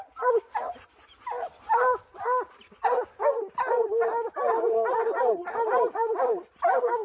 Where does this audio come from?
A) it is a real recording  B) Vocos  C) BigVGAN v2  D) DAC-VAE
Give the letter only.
A